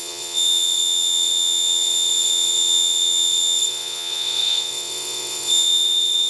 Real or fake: fake